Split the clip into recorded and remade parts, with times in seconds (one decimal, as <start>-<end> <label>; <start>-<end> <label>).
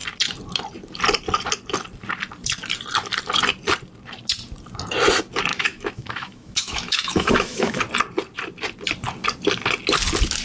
0.0-5.5 recorded; 5.5-7.8 remade; 7.8-10.4 recorded